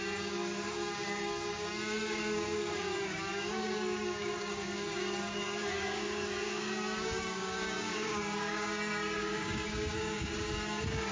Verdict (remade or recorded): remade